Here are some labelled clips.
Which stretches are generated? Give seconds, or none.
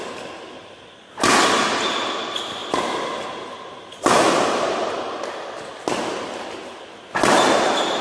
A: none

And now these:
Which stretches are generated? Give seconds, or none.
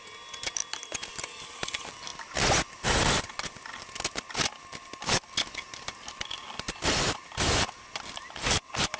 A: none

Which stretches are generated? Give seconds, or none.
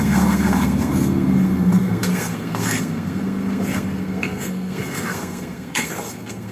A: 0.0-6.5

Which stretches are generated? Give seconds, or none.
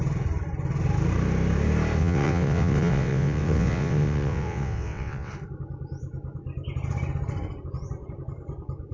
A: 2.0-5.3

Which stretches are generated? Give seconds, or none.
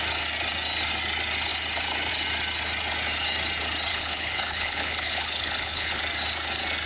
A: 3.9-6.0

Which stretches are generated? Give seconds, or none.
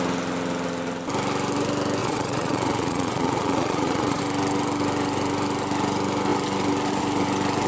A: 2.0-4.2